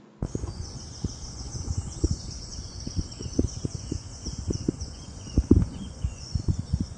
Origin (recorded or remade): remade